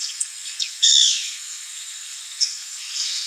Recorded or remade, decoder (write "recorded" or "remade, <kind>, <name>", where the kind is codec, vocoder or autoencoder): remade, codec, SNAC